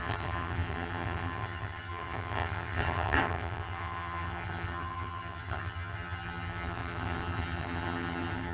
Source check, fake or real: fake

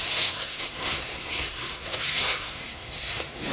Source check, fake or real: fake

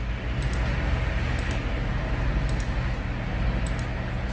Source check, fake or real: real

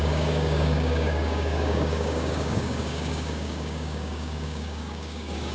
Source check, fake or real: fake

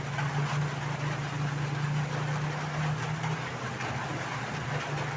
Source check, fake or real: real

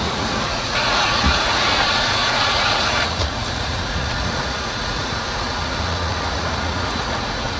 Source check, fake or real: fake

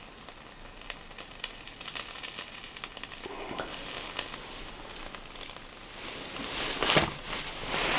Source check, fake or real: real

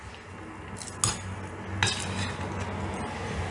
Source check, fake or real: real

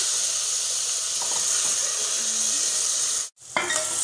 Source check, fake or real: real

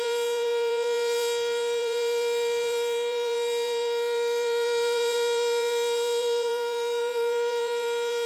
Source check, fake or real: fake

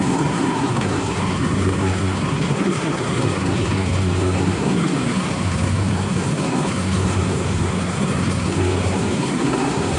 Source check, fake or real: fake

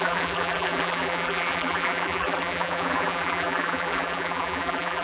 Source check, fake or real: fake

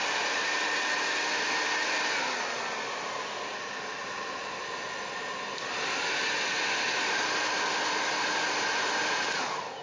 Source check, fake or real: real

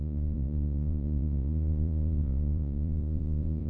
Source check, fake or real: fake